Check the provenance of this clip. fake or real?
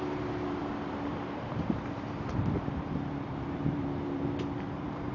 fake